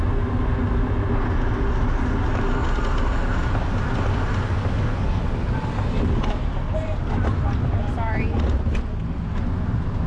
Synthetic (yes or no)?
no